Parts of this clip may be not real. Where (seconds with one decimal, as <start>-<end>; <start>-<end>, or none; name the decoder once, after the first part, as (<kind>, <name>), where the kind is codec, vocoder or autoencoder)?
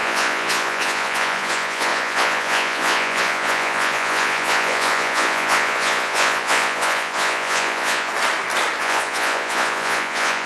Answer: 0.0-8.1 (vocoder, Vocos); 8.8-10.5